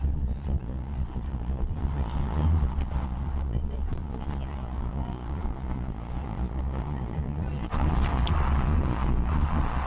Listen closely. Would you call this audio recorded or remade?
remade